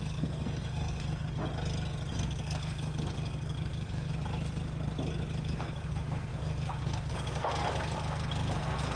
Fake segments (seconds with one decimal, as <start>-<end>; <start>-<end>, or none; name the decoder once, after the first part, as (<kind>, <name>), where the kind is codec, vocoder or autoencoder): 0.0-1.4 (codec, SNAC); 2.1-4.1; 5.4-9.0